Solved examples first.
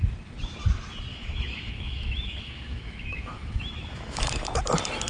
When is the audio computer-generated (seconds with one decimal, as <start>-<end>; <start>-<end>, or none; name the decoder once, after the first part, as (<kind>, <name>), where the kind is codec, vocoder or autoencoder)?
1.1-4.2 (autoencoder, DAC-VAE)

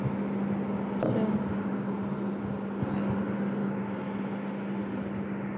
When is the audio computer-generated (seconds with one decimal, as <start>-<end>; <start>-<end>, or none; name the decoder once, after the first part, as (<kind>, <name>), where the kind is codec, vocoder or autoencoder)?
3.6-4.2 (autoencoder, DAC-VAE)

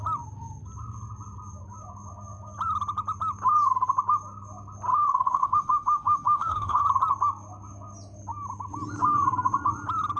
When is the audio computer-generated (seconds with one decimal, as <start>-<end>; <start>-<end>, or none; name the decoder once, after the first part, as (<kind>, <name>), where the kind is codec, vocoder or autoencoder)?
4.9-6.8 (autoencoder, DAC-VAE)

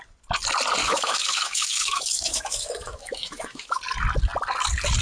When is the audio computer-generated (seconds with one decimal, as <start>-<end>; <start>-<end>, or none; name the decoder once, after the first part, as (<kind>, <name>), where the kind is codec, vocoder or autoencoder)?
0.8-3.8 (autoencoder, DAC-VAE)

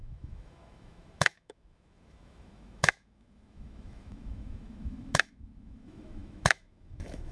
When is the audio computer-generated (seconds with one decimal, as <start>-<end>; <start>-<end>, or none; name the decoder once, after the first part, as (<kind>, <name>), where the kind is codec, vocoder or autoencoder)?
0.0-7.3 (autoencoder, DAC-VAE)

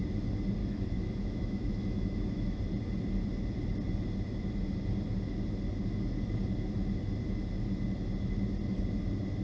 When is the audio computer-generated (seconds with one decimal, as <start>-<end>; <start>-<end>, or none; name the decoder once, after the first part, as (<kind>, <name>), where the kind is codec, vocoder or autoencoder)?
0.6-2.6 (autoencoder, DAC-VAE)